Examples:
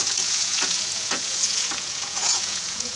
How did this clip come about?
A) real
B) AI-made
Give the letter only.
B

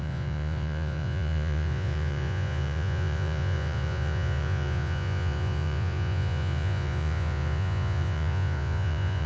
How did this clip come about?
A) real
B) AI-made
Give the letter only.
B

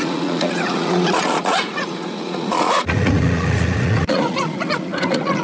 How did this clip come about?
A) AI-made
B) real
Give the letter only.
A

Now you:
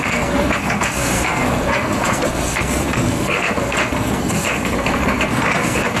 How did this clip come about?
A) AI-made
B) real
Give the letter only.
A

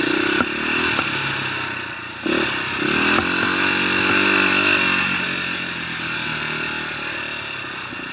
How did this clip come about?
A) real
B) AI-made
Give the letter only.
A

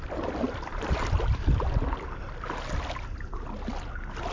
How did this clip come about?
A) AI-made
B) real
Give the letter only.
B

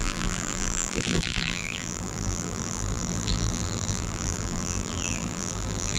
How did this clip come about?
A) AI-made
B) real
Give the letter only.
A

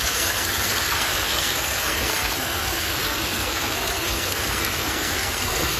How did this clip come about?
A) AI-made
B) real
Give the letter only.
A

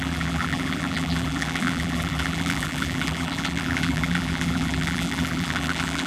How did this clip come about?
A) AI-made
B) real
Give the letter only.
A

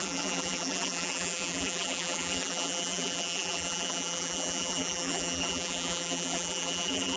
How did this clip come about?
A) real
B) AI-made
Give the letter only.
B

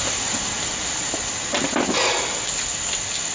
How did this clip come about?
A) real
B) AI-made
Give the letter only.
A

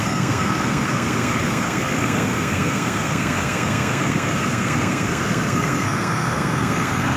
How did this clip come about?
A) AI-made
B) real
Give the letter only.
A